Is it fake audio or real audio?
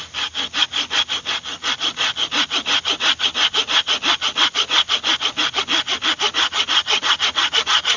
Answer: real